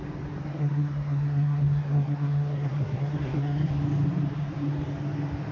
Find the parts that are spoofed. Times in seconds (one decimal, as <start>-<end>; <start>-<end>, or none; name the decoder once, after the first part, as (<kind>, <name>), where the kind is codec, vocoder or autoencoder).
0.4-3.7 (codec, SNAC)